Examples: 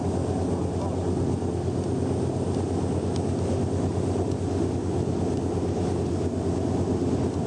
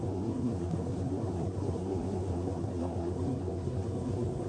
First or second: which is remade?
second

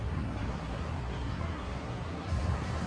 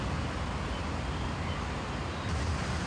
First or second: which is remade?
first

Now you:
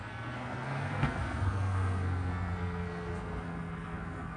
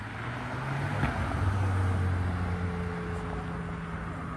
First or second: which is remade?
first